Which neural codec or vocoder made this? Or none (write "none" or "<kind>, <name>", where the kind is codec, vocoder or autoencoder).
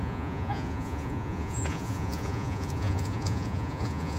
vocoder, Vocos